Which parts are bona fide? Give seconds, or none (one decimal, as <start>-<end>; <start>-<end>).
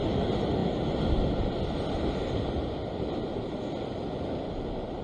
0.0-5.0